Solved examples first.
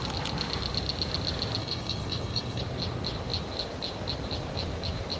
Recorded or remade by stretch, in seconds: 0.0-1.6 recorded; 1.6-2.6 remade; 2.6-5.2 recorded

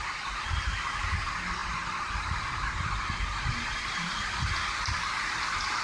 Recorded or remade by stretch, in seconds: 0.0-5.8 recorded